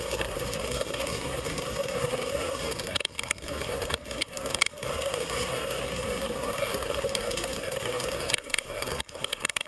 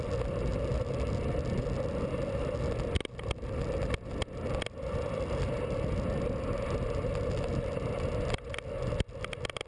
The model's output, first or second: first